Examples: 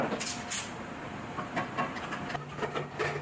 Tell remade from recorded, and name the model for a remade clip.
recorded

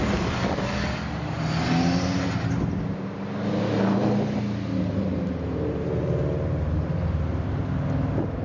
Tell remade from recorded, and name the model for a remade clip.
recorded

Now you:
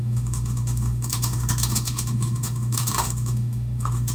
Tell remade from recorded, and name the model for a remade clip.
remade, autoencoder, DAC-VAE